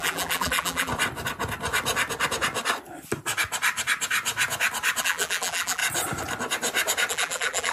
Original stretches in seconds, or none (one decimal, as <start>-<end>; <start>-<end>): 0.9-5.0; 5.8-7.1

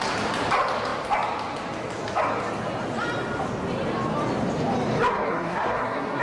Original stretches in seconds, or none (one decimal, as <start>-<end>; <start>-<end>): 0.0-5.1

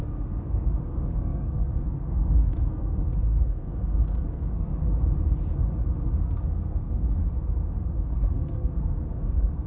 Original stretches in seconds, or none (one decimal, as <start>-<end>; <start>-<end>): 4.7-6.2; 7.2-7.8

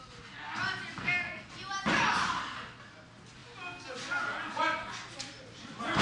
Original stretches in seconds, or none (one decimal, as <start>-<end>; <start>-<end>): 0.0-1.0; 1.5-6.0

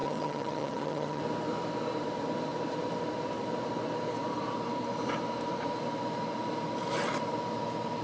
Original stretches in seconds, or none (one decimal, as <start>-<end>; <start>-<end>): 1.2-8.0

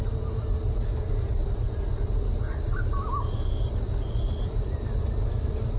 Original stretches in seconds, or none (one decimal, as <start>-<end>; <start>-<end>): 0.0-1.4; 4.9-5.8

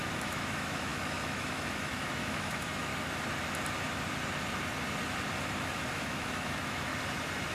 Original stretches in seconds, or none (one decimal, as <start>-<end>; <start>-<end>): 2.9-5.4; 6.9-7.5

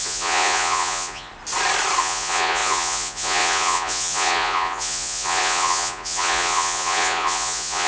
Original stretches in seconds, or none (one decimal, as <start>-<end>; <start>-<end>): 1.3-2.0